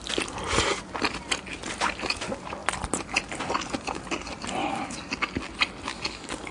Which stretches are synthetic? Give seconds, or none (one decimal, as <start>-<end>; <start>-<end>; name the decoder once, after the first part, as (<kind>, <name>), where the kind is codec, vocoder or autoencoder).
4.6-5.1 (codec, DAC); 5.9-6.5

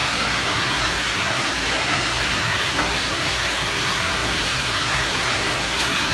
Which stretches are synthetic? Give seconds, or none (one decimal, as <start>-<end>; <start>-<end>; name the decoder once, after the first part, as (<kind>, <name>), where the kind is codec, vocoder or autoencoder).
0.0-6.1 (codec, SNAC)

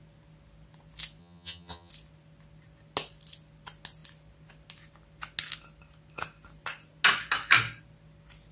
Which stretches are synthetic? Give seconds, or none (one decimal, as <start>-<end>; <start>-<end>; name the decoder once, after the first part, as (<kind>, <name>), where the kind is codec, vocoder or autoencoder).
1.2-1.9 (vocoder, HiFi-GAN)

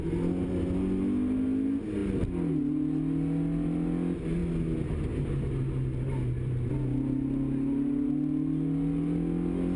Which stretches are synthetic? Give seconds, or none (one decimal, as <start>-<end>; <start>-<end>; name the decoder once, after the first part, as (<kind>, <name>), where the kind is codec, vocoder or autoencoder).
none

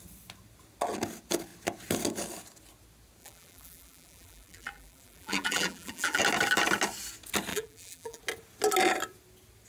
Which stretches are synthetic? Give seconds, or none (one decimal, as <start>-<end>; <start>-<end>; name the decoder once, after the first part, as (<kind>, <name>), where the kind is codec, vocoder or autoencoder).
3.2-6.2 (vocoder, BigVGAN v2); 7.5-8.2

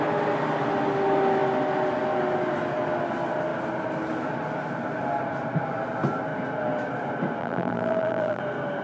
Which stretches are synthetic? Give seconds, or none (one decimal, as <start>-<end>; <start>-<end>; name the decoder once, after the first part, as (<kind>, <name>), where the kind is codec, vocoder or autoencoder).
7.4-8.4 (vocoder, BigVGAN v2)